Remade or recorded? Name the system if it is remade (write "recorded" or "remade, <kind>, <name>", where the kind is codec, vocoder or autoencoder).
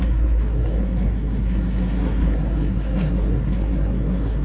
remade, codec, SNAC